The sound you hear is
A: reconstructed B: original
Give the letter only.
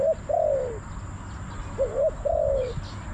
B